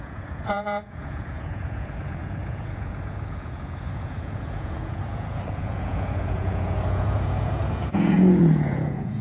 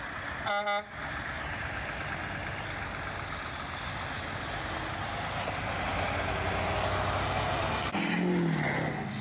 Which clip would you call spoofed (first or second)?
first